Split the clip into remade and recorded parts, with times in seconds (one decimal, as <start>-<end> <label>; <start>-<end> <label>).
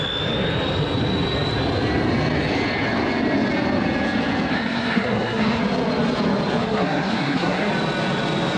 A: 0.0-4.5 recorded; 4.5-5.6 remade; 5.6-6.6 recorded; 6.6-7.7 remade; 7.7-8.6 recorded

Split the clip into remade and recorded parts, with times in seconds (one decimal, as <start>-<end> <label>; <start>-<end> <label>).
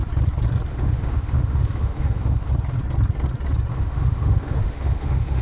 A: 0.0-0.7 recorded; 0.7-2.5 remade; 2.5-3.7 recorded; 3.7-5.4 remade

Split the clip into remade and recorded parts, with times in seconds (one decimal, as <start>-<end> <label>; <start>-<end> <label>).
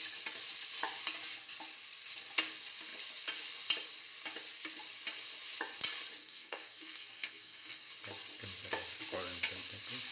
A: 0.0-6.2 recorded; 6.2-7.9 remade; 7.9-10.1 recorded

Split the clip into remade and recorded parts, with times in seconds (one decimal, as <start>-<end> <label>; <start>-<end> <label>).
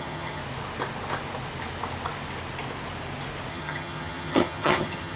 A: 0.0-0.4 remade; 0.4-3.5 recorded; 3.5-5.2 remade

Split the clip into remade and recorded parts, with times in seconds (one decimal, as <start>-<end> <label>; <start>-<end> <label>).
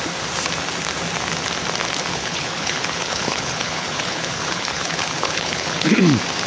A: 0.0-2.1 recorded; 2.1-6.0 remade; 6.0-6.5 recorded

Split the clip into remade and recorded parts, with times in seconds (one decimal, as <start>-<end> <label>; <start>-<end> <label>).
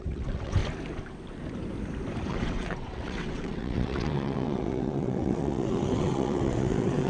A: 0.0-0.6 remade; 0.6-2.3 recorded; 2.3-7.1 remade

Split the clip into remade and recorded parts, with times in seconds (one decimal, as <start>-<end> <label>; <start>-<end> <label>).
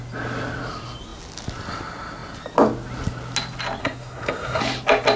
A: 0.0-3.8 recorded; 3.8-4.6 remade; 4.6-5.2 recorded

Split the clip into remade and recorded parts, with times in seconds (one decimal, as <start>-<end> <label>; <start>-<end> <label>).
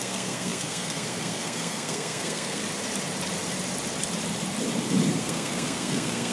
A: 0.0-2.6 remade; 2.6-5.2 recorded; 5.2-6.3 remade